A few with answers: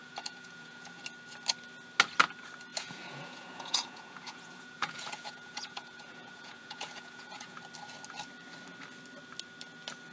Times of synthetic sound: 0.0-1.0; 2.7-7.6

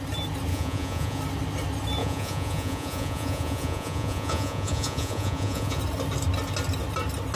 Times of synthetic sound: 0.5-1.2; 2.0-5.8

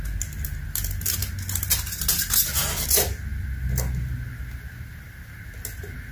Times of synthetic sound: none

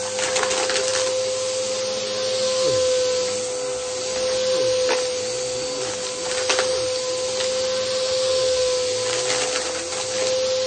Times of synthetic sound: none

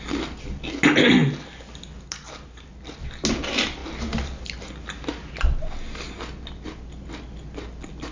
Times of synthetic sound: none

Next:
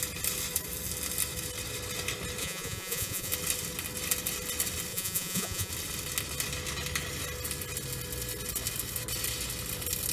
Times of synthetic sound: 2.4-3.3; 4.9-5.7